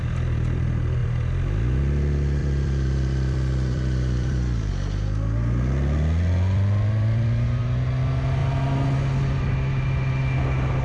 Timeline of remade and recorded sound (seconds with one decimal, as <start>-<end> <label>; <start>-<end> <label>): 0.0-2.4 recorded; 2.4-4.7 remade; 4.7-10.8 recorded